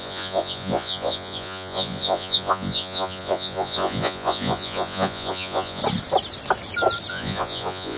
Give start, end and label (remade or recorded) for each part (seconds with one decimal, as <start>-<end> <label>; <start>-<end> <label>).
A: 0.0-5.8 remade; 5.8-7.1 recorded; 7.1-8.0 remade